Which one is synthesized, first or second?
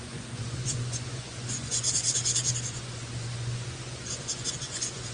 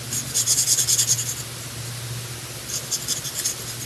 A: first